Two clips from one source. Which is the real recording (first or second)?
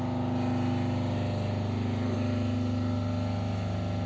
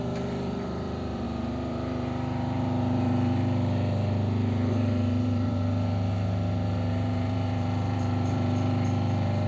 first